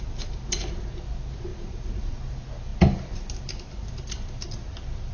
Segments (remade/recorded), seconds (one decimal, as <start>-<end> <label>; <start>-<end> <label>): 0.0-1.5 recorded; 1.5-2.2 remade; 2.2-5.1 recorded